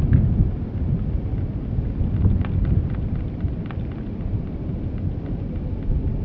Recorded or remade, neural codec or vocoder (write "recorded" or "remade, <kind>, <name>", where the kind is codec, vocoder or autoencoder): recorded